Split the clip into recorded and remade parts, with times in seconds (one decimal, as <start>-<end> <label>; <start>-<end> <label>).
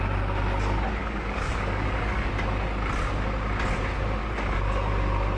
0.0-1.0 recorded; 1.0-2.3 remade; 2.3-4.2 recorded; 4.2-4.9 remade; 4.9-5.4 recorded